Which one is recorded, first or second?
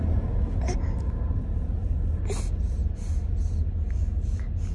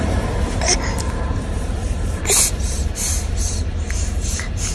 first